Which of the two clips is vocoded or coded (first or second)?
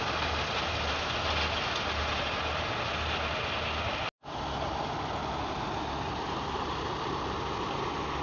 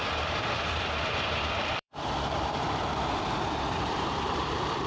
second